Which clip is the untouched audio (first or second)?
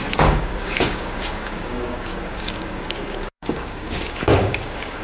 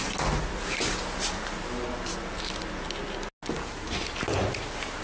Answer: second